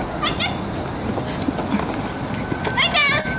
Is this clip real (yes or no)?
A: yes